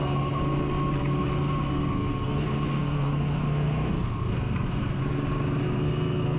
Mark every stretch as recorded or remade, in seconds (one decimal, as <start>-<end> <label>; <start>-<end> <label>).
0.0-0.4 remade; 0.4-1.7 recorded; 1.7-5.0 remade; 5.0-5.6 recorded; 5.6-6.4 remade